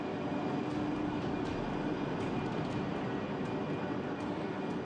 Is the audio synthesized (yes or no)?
yes